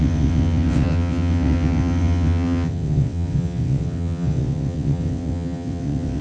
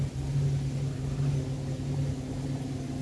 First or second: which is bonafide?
second